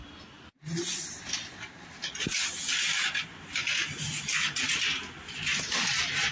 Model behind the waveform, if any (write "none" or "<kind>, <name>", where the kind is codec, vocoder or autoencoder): none